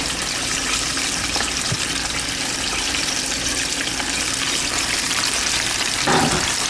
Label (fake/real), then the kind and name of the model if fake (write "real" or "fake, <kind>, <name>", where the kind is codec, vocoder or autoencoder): fake, vocoder, BigVGAN v2